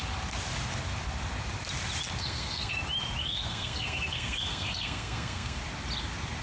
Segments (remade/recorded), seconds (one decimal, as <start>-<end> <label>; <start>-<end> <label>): 0.0-2.2 recorded; 2.2-2.8 remade; 2.8-3.2 recorded; 3.2-5.6 remade; 5.6-6.4 recorded